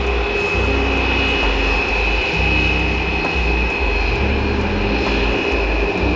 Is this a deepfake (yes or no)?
no